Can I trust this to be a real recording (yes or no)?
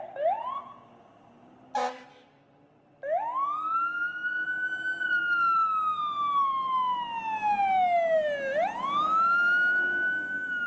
yes